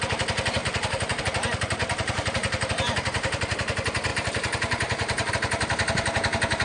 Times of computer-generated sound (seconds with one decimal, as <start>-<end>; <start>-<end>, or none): 0.6-1.2; 1.8-2.7; 4.1-5.3